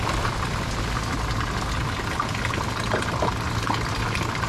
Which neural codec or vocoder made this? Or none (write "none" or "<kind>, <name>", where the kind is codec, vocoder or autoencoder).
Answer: none